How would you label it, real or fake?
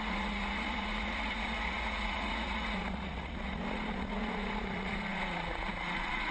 fake